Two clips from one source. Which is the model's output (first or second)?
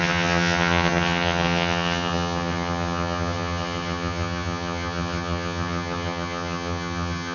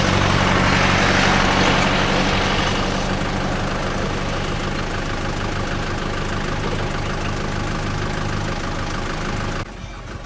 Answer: first